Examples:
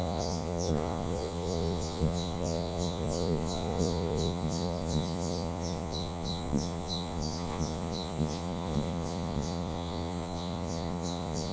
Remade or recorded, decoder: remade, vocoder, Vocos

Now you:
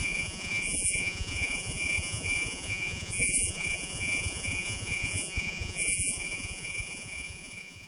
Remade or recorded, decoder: remade, vocoder, Vocos